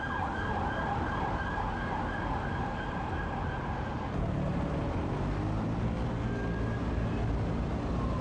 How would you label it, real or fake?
real